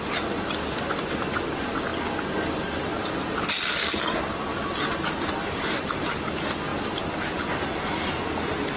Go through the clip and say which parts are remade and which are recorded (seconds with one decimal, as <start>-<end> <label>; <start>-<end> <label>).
0.0-8.8 recorded